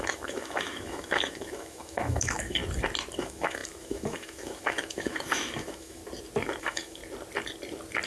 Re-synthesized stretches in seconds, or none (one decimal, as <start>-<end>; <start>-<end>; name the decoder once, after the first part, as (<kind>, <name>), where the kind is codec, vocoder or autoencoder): 0.0-2.6 (autoencoder, DAC-VAE); 3.2-6.0; 6.6-7.0